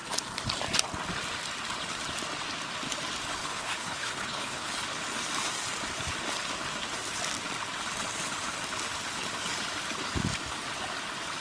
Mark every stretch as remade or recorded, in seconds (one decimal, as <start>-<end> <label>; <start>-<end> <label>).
0.0-3.4 recorded; 3.4-4.7 remade; 4.7-11.4 recorded